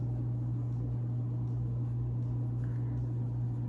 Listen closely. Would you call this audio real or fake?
real